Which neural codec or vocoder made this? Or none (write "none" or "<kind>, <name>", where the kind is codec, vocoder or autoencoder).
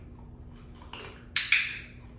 none